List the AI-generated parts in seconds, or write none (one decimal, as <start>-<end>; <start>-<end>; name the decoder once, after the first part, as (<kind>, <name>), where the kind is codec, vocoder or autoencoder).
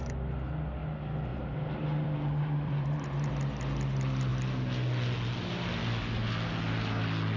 1.3-3.3 (vocoder, BigVGAN v2)